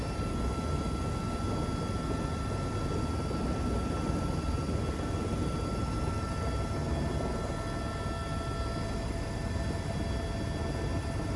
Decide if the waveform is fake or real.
real